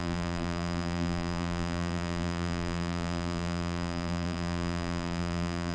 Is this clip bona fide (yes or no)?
no